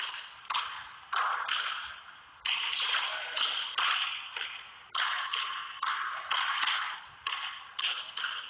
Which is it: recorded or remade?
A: recorded